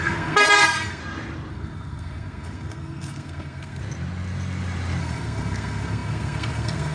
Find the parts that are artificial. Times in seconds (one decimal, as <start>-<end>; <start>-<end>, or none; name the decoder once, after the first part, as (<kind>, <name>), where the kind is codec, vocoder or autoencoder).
0.0-1.0 (codec, SNAC); 1.5-3.8; 5.0-6.9

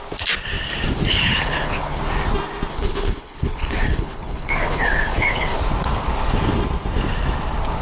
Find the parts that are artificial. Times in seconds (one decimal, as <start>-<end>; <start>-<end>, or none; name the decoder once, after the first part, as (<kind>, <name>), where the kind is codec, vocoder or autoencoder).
1.1-2.0 (codec, HILCodec); 2.7-5.6